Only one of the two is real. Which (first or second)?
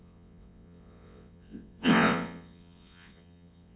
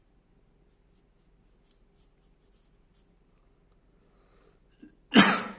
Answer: second